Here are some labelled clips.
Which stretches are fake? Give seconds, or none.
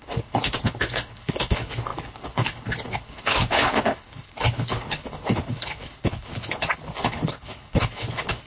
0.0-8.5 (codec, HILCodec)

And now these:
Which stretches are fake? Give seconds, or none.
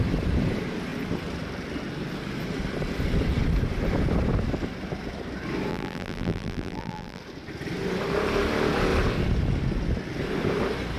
5.7-7.2 (vocoder, BigVGAN v2)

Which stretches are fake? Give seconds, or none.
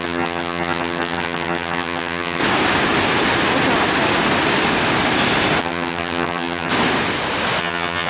0.0-2.4 (vocoder, HiFi-GAN); 5.6-6.7; 7.6-8.1